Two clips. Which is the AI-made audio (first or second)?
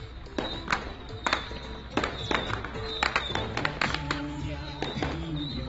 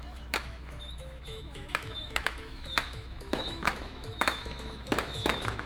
second